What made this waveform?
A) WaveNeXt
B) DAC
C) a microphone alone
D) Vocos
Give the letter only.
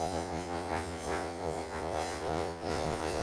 D